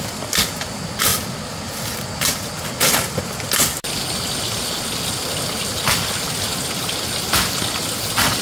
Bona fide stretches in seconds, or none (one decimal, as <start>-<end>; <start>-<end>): 0.0-8.4